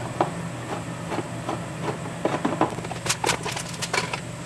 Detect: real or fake real